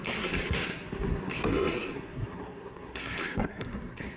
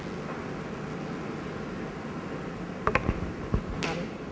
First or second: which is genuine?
second